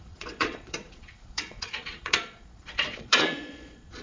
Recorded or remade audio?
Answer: remade